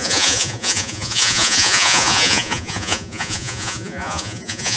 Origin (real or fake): fake